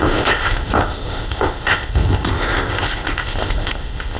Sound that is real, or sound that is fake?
fake